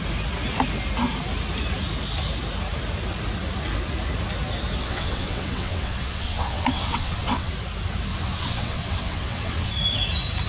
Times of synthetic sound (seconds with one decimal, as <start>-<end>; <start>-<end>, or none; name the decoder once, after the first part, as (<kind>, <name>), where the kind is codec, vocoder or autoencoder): 4.8-7.5 (vocoder, WaveNeXt); 8.1-9.7